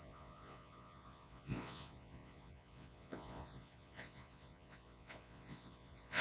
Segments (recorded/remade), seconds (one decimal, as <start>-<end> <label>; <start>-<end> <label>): 0.0-6.2 remade